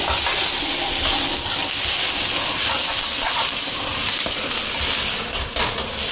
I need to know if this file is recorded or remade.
recorded